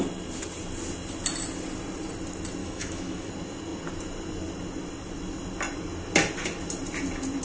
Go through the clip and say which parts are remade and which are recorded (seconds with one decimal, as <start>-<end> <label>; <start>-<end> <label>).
0.0-2.6 recorded; 2.6-3.3 remade; 3.3-7.4 recorded